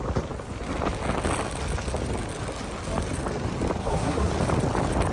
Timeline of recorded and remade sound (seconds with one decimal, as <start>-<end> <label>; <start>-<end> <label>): 0.0-3.8 recorded; 3.8-4.3 remade; 4.3-5.1 recorded